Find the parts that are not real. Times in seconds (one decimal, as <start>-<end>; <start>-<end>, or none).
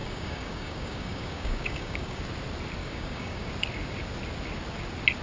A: 0.0-2.2; 2.8-3.5